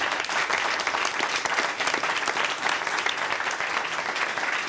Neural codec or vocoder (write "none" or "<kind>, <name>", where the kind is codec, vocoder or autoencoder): none